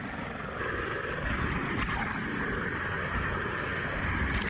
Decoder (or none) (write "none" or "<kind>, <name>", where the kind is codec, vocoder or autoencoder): none